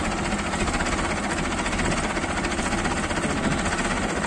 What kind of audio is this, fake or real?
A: real